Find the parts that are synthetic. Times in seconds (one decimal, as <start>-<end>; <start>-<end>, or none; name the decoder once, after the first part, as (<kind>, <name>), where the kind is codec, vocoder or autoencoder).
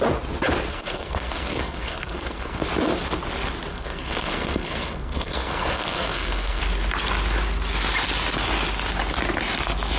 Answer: 0.7-2.6 (codec, SNAC); 3.7-6.6